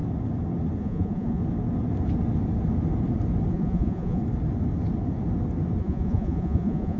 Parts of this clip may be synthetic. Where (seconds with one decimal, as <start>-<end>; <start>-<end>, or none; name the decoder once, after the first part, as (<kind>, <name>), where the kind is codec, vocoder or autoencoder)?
0.8-1.4 (vocoder, Vocos); 3.5-4.2; 5.8-7.0